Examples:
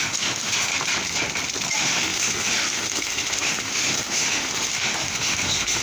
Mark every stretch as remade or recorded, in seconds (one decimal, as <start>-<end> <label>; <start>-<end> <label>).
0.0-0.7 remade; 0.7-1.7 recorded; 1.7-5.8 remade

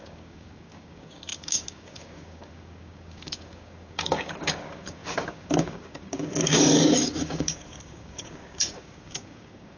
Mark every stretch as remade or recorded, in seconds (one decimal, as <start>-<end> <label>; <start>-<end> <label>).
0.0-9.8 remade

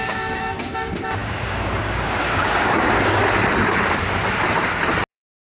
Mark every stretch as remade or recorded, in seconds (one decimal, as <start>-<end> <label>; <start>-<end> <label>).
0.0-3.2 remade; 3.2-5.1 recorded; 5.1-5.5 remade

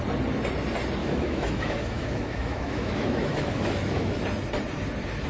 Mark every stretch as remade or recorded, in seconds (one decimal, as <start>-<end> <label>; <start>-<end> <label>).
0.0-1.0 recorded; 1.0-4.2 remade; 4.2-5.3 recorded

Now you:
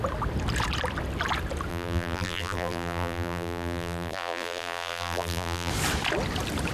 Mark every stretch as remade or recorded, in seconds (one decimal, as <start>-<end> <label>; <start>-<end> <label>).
0.0-1.7 recorded; 1.7-5.7 remade; 5.7-6.7 recorded

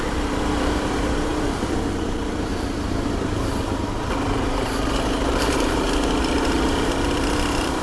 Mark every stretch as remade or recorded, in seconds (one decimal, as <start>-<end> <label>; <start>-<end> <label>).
0.0-7.8 remade

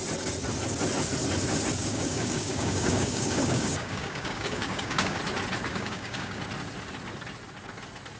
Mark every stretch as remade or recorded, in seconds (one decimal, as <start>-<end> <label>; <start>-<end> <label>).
0.0-1.8 recorded; 1.8-5.2 remade; 5.2-5.7 recorded; 5.7-6.4 remade; 6.4-8.2 recorded